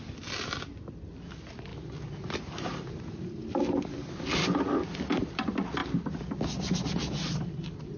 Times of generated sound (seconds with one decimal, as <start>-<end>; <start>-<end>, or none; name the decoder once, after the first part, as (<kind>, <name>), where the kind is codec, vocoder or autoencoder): none